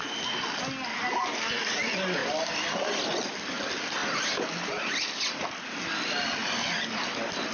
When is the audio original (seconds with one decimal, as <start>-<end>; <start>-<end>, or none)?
0.0-2.2; 3.2-4.0; 5.3-7.5